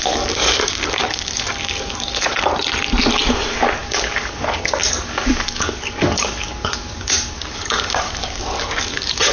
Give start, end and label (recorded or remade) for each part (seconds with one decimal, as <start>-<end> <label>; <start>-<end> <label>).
0.0-2.5 remade; 2.5-3.7 recorded; 3.7-9.3 remade